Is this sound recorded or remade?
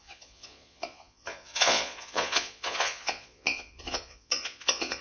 remade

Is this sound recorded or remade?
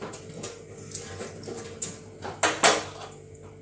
recorded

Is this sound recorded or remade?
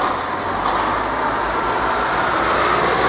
recorded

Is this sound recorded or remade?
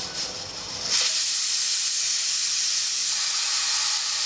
recorded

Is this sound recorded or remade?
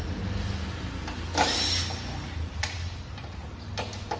recorded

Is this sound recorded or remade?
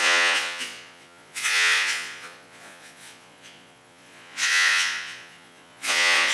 remade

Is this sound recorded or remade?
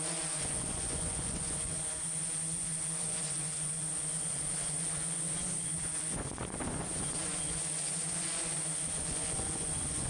remade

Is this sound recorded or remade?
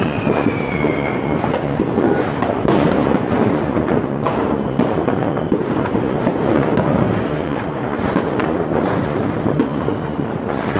remade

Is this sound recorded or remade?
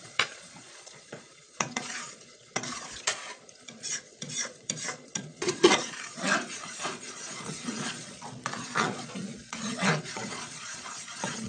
remade